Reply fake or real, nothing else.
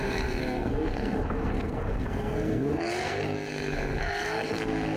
fake